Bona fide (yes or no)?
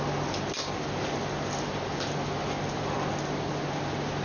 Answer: yes